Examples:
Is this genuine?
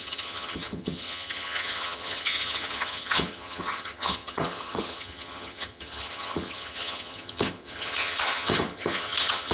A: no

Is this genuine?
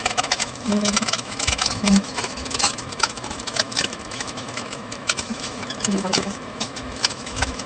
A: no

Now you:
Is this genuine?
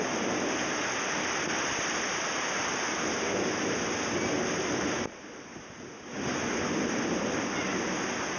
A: yes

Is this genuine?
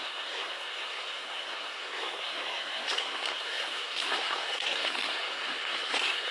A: no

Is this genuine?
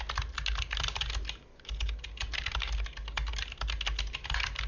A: yes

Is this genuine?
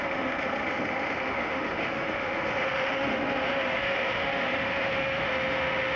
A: no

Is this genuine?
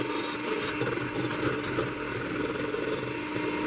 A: yes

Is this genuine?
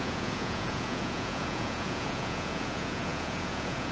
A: no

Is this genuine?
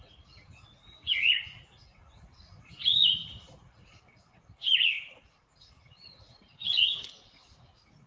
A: no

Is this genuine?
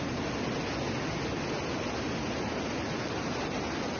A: yes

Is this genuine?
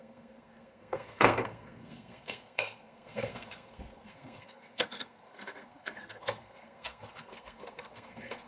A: no